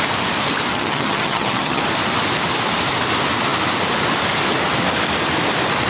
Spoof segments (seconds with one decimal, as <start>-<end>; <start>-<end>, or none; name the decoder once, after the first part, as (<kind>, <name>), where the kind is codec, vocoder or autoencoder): 0.7-1.8 (vocoder, HiFi-GAN)